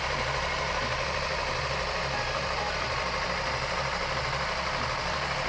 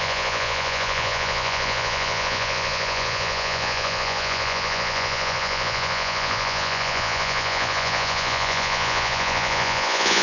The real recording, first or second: first